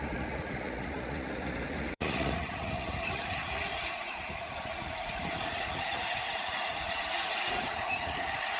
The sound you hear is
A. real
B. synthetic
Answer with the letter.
B